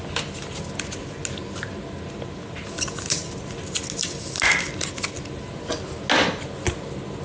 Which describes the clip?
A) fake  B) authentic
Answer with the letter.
B